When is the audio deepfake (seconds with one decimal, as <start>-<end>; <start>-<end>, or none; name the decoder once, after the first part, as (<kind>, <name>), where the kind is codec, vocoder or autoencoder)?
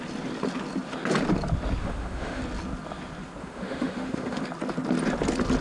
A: 1.8-2.4 (autoencoder, DAC-VAE); 3.4-4.4